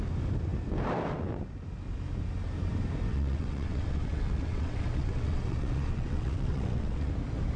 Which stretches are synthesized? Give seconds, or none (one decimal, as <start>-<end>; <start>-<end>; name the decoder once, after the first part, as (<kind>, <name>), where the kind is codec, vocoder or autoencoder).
3.1-7.1 (vocoder, WaveNeXt)